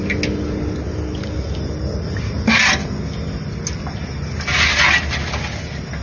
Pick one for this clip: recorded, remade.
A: recorded